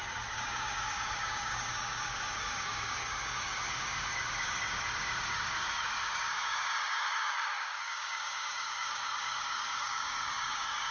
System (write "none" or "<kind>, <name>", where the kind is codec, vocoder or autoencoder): codec, DAC